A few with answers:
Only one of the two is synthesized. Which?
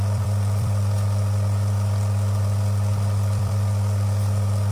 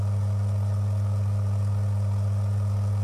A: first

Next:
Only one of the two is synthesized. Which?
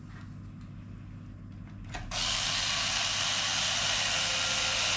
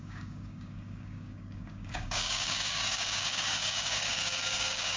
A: second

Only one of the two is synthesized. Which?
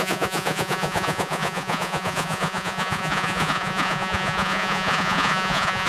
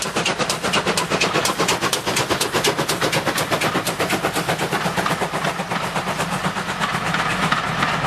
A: first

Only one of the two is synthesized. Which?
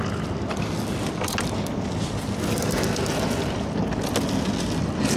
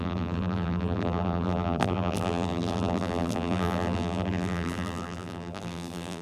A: second